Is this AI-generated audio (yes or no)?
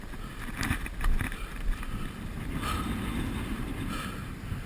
no